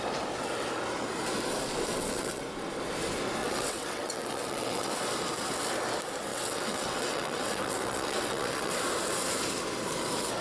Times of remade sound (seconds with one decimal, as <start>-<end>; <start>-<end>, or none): 1.9-2.4; 3.4-4.9; 6.3-8.7